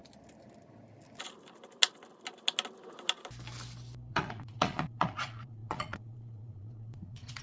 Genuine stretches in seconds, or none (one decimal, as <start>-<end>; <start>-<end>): 0.0-4.1